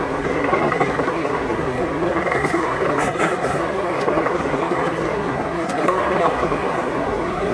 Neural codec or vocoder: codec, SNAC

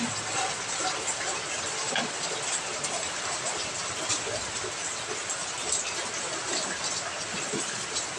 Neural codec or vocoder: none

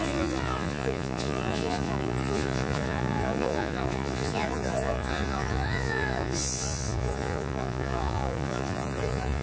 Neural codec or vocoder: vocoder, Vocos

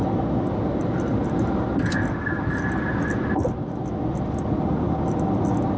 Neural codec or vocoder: none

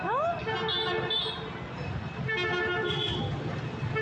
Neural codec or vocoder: none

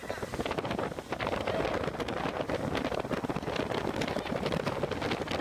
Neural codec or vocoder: none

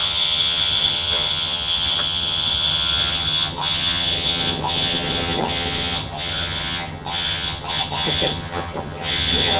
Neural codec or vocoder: vocoder, HiFi-GAN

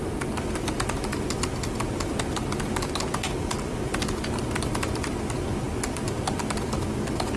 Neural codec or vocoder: none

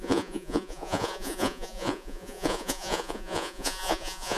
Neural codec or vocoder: vocoder, Vocos